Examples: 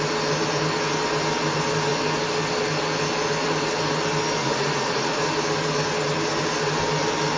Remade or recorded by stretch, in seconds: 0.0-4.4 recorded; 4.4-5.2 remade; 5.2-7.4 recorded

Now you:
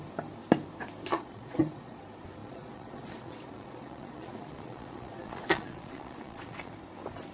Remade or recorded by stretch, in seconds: 0.0-1.1 recorded; 1.1-2.0 remade; 2.0-2.4 recorded; 2.4-6.7 remade; 6.7-7.3 recorded

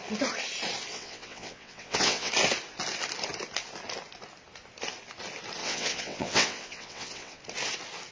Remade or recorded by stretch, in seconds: 0.0-0.9 recorded; 0.9-2.3 remade; 2.3-5.6 recorded; 5.6-7.4 remade; 7.4-8.1 recorded

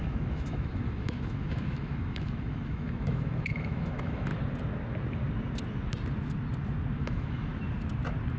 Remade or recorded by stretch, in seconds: 0.0-4.3 remade; 4.3-7.0 recorded; 7.0-7.5 remade; 7.5-8.4 recorded

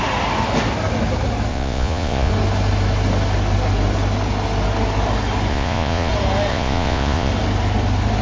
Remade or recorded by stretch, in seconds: 0.0-1.5 recorded; 1.5-2.3 remade; 2.3-5.5 recorded; 5.5-6.1 remade; 6.1-6.5 recorded; 6.5-7.3 remade; 7.3-8.2 recorded

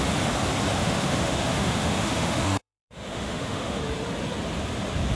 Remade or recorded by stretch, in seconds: 0.0-0.7 recorded; 0.7-3.8 remade; 3.8-5.2 recorded

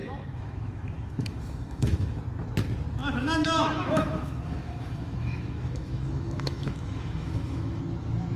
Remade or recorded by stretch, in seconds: 0.0-2.2 remade; 2.2-3.0 recorded; 3.0-7.8 remade; 7.8-8.4 recorded